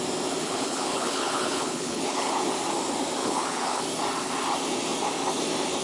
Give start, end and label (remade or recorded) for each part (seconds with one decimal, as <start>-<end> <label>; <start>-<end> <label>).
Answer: 0.0-0.4 recorded; 0.4-2.4 remade; 2.4-3.2 recorded; 3.2-3.8 remade; 3.8-5.8 recorded